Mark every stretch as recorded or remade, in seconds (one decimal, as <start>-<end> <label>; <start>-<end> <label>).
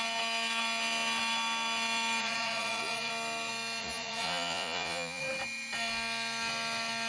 0.0-2.2 recorded; 2.2-3.1 remade; 3.1-3.8 recorded; 3.8-5.2 remade; 5.2-7.1 recorded